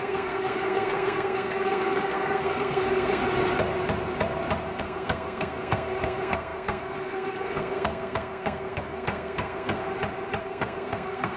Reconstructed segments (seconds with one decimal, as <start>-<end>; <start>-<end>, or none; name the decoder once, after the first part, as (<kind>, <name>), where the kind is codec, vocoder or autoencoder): 0.0-3.2 (codec, SNAC); 4.8-9.8; 10.4-11.4